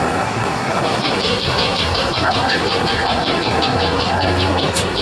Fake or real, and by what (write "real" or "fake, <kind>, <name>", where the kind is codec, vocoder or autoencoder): fake, codec, SNAC